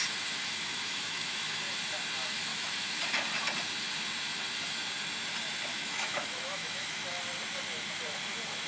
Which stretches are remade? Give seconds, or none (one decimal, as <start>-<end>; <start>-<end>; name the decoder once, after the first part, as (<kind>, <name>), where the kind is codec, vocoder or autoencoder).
0.4-1.6 (autoencoder, DAC-VAE); 2.5-3.0; 5.7-7.2